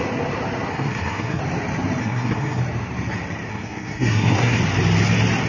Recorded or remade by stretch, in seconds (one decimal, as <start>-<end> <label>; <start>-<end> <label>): 0.0-0.7 recorded; 0.7-1.4 remade; 1.4-2.0 recorded; 2.0-2.6 remade; 2.6-3.5 recorded; 3.5-4.6 remade; 4.6-5.5 recorded